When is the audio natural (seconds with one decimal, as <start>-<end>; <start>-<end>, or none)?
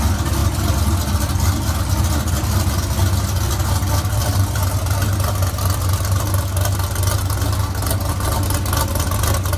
0.0-9.6